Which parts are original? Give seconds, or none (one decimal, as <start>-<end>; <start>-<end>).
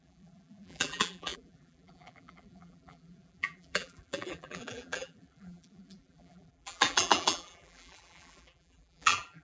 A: none